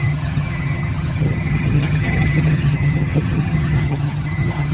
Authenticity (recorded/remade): remade